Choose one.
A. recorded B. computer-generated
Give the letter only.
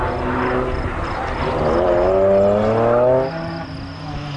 A